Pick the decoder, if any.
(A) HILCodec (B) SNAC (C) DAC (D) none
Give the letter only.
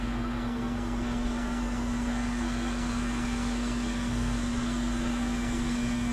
B